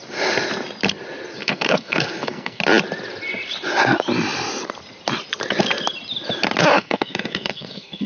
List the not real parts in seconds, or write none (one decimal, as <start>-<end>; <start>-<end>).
1.4-2.6; 6.7-8.1